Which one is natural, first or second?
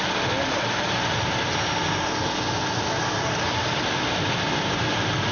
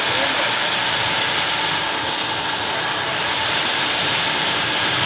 first